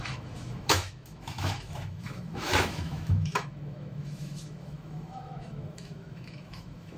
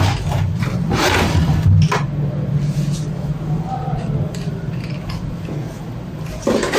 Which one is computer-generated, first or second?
first